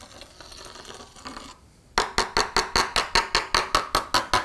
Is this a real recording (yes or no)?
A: yes